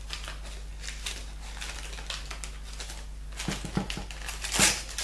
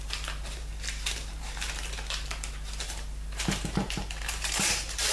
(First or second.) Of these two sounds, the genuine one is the first